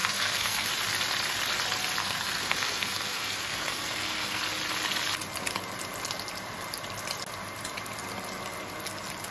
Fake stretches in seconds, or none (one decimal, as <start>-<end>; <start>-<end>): 0.0-0.7; 2.0-4.4